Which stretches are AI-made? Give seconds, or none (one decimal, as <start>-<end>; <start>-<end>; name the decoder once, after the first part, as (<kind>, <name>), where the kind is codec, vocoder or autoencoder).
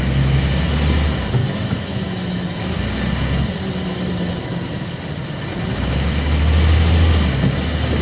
1.4-2.8 (autoencoder, DAC-VAE)